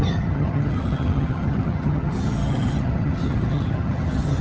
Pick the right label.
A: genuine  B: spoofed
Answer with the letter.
B